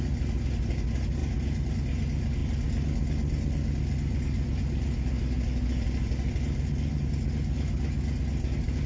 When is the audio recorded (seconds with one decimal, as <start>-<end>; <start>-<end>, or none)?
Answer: 0.0-8.9